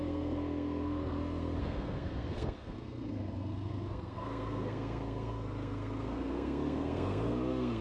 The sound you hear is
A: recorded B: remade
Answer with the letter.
B